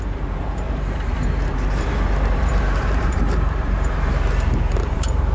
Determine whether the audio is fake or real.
fake